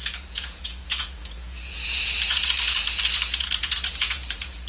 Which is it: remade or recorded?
remade